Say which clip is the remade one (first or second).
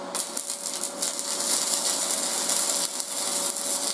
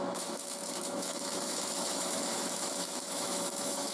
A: second